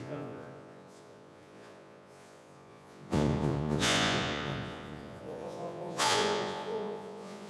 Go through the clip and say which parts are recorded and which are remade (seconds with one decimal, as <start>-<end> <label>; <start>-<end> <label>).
0.0-7.5 remade